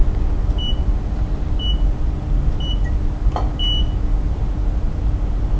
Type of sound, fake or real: real